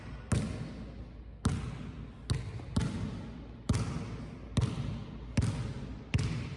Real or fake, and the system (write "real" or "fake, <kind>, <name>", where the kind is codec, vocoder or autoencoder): real